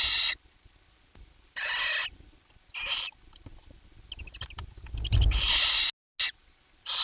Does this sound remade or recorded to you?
recorded